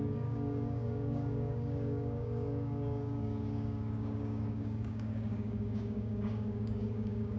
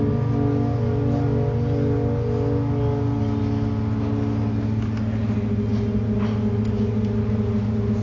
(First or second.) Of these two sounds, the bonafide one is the second